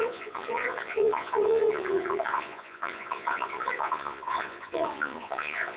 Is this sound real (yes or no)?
no